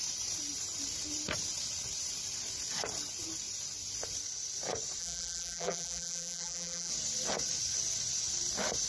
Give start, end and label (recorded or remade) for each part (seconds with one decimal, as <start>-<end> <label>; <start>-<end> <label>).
0.0-5.0 recorded; 5.0-6.9 remade; 6.9-8.9 recorded